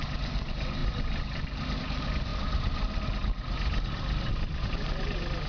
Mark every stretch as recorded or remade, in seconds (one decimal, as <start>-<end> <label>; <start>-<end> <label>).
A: 0.0-5.5 recorded